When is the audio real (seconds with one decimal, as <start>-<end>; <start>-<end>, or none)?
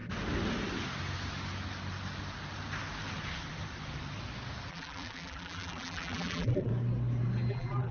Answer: 0.0-4.7; 6.7-7.5